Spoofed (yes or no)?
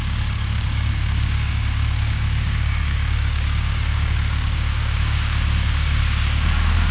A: yes